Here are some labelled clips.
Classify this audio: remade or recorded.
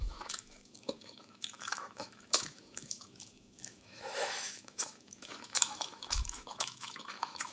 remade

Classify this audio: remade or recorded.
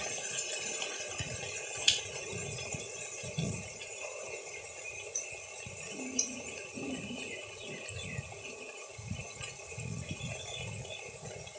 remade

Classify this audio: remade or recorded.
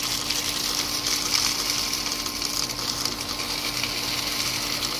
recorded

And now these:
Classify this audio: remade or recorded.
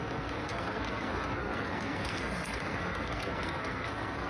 remade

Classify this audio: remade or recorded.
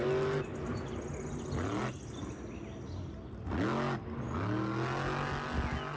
recorded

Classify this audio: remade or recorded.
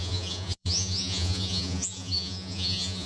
remade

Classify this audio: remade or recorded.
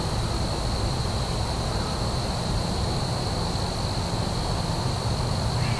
recorded